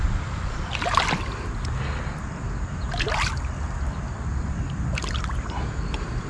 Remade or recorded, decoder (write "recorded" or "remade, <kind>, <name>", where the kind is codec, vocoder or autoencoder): recorded